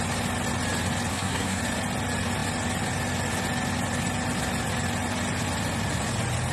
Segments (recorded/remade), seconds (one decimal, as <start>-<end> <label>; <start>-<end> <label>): 0.0-1.1 recorded; 1.1-1.6 remade; 1.6-6.5 recorded